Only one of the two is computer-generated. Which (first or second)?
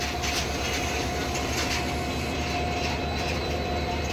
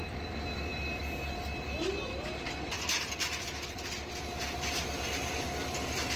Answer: second